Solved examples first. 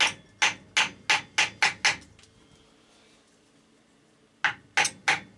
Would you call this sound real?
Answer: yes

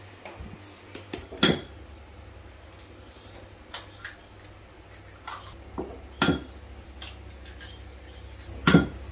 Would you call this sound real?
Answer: yes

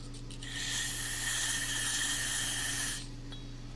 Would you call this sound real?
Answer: yes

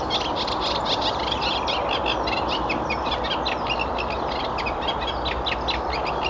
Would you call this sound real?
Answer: yes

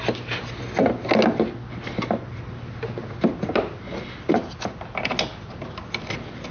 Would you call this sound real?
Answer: yes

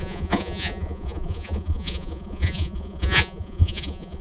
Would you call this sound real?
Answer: no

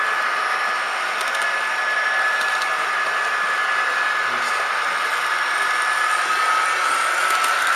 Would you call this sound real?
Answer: yes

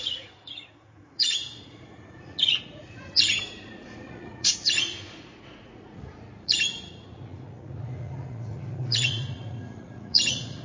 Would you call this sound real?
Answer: no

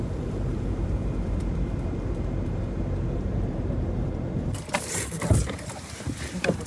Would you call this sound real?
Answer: no